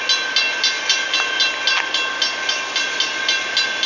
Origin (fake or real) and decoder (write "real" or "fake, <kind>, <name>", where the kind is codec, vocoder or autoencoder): real